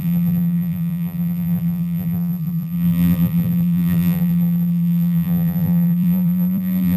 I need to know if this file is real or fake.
fake